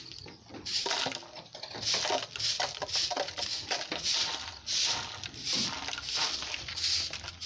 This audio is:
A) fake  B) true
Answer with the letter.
B